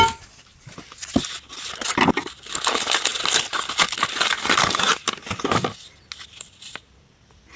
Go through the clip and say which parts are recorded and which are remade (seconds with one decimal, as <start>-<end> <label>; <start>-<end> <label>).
0.0-7.6 recorded